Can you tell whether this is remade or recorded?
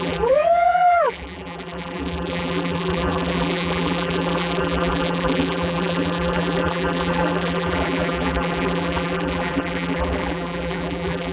remade